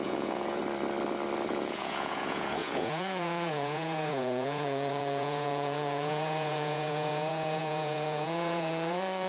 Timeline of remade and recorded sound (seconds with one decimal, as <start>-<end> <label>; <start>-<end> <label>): 0.0-0.6 remade; 0.6-1.5 recorded; 1.5-9.3 remade

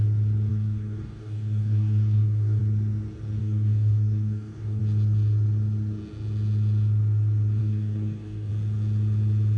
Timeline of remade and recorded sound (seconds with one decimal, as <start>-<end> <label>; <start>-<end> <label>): 0.0-0.5 recorded; 0.5-2.6 remade; 2.6-3.4 recorded; 3.4-4.8 remade; 4.8-7.6 recorded; 7.6-8.5 remade; 8.5-9.6 recorded

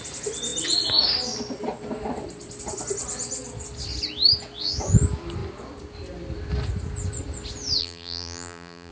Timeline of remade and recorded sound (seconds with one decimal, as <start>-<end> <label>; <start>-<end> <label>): 0.0-7.8 recorded; 7.8-8.9 remade